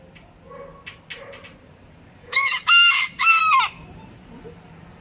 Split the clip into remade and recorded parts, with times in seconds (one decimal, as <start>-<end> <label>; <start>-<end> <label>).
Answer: 0.0-2.2 recorded; 2.2-3.4 remade; 3.4-5.0 recorded